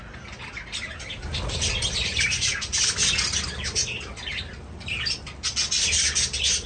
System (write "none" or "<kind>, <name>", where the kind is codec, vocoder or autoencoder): none